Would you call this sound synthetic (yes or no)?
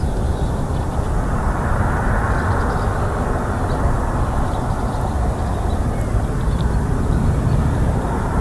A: no